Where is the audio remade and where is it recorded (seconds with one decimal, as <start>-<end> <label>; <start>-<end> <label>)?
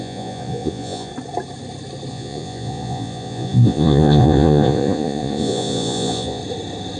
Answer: 0.0-1.1 remade; 1.1-2.1 recorded; 2.1-6.4 remade; 6.4-7.0 recorded